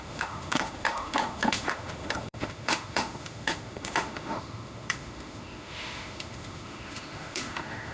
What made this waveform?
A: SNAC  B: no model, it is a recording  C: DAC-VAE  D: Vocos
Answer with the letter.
C